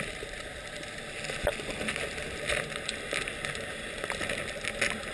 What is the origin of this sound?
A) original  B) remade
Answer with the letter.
A